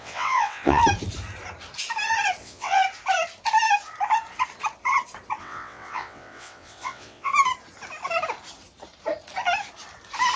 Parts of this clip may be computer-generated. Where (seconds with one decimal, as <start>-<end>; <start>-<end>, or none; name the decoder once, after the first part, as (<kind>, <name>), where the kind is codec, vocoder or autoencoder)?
0.0-0.8 (vocoder, WaveNeXt); 2.4-2.8; 5.4-7.3